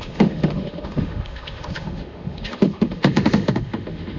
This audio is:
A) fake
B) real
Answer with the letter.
A